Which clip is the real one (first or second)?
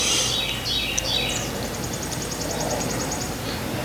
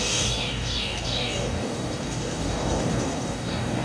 first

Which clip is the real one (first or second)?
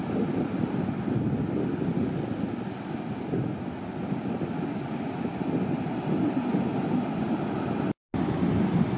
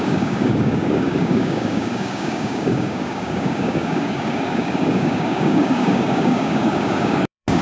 first